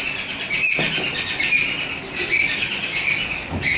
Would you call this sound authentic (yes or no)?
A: yes